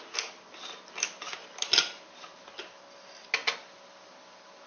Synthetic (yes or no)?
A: no